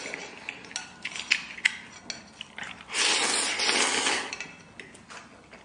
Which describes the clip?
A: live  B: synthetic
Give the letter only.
A